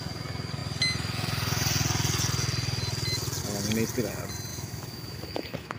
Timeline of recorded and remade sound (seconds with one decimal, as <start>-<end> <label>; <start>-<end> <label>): 0.0-4.5 recorded; 4.5-5.8 remade